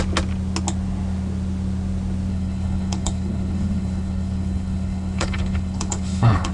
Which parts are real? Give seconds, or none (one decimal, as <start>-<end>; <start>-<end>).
0.0-2.3